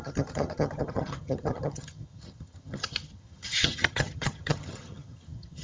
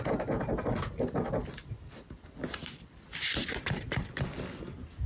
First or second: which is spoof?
first